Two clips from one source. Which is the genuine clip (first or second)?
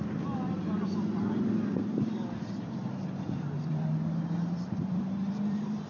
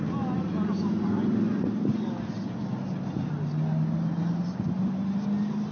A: second